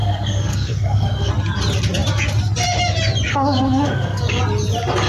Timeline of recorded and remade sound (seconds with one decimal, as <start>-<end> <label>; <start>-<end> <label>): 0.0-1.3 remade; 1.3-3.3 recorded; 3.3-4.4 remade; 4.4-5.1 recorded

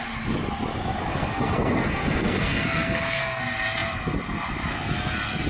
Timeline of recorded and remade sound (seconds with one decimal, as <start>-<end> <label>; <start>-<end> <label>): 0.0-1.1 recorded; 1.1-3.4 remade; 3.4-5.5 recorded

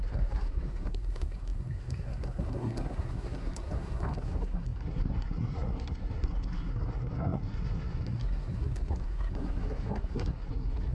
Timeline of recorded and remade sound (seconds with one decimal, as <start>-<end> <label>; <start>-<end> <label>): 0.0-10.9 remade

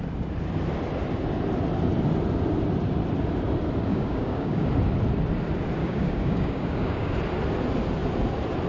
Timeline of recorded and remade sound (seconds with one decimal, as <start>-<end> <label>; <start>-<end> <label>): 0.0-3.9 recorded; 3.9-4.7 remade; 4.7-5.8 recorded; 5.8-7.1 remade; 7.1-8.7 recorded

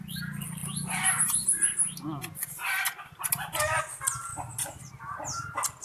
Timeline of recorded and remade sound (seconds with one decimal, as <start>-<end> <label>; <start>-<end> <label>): 0.0-4.3 recorded; 4.3-4.8 remade; 4.8-5.8 recorded